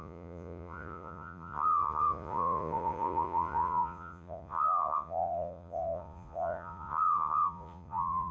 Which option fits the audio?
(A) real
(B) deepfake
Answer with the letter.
B